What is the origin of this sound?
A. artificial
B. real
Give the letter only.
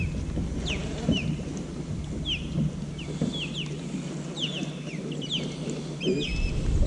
B